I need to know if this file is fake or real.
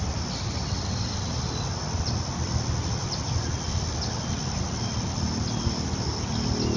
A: real